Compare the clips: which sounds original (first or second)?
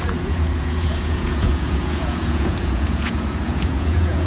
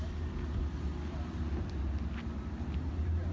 second